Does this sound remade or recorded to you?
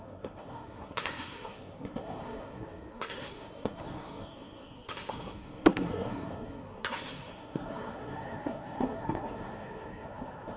remade